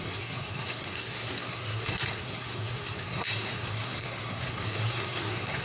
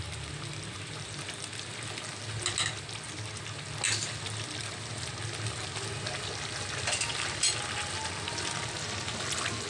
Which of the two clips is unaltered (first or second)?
second